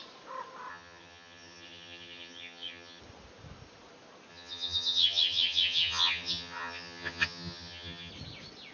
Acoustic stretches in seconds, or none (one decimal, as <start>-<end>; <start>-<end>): 0.0-0.7; 3.0-4.3; 8.1-8.7